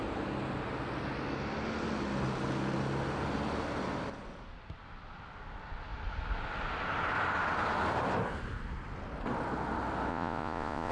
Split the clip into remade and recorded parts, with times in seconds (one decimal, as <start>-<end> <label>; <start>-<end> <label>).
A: 0.0-10.1 recorded; 10.1-10.9 remade